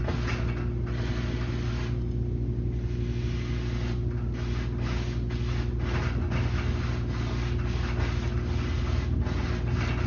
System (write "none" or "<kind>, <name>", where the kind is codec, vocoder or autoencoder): none